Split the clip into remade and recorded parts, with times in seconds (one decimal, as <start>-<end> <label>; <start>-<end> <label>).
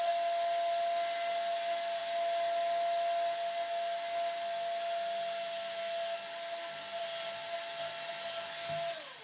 0.0-9.2 recorded